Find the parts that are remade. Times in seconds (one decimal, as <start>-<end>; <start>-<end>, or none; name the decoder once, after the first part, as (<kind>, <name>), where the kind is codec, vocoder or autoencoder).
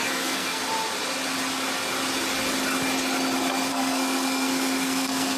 0.0-0.6 (codec, SNAC); 3.7-5.4